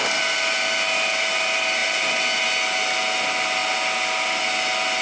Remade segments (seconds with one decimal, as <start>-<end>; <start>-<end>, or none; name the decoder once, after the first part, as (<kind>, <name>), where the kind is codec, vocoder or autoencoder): none